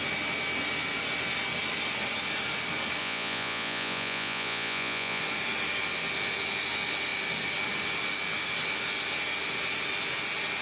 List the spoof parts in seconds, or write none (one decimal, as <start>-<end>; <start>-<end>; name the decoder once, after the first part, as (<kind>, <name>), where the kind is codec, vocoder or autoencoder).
3.0-5.2 (vocoder, Vocos)

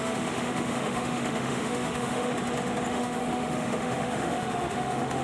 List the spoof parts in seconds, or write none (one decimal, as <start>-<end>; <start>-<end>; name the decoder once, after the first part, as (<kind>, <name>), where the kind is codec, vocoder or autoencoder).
0.0-2.3 (autoencoder, DAC-VAE); 2.9-5.2

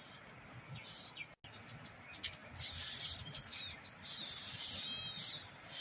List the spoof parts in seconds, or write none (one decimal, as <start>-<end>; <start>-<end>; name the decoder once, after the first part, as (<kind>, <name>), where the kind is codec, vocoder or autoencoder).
none